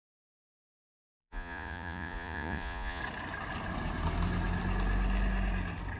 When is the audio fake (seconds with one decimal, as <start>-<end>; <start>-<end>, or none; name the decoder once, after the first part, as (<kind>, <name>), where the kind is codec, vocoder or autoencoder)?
0.0-3.0 (vocoder, Vocos)